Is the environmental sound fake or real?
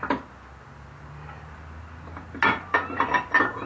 real